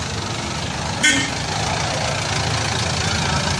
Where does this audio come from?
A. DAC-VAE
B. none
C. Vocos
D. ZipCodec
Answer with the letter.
B